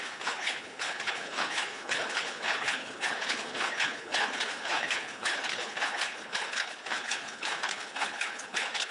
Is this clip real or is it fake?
fake